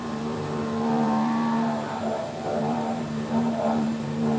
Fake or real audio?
fake